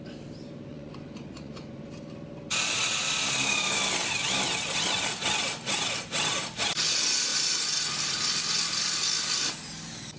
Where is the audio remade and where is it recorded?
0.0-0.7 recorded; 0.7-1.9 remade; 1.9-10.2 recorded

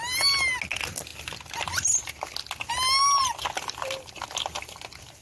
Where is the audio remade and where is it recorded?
0.0-5.2 recorded

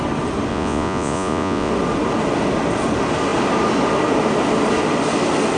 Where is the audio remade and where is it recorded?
0.0-0.5 recorded; 0.5-1.7 remade; 1.7-5.6 recorded